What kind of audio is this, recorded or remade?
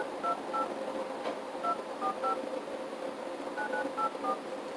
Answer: recorded